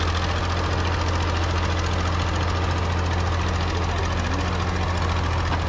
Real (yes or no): yes